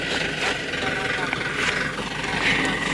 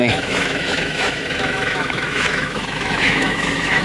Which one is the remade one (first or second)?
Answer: second